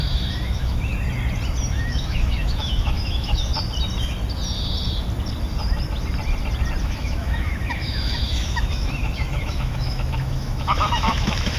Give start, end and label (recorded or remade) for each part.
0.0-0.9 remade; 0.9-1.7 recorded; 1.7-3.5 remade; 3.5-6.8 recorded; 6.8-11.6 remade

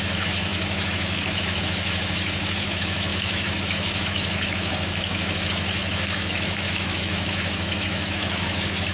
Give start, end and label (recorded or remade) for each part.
0.0-8.9 remade